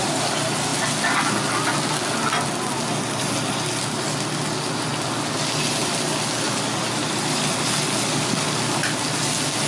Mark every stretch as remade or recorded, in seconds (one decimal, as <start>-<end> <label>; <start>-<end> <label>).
0.0-9.7 recorded